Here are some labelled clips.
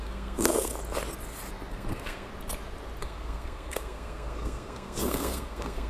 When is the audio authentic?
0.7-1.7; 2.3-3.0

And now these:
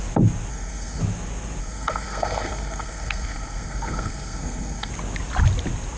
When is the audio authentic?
0.0-0.5; 1.0-1.6; 4.9-6.0

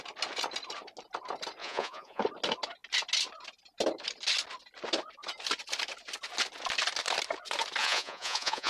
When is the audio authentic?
0.0-1.6; 2.2-7.8